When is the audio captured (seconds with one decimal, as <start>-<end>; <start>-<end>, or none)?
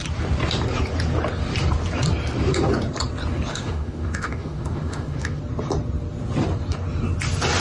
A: 0.0-3.5; 5.4-7.6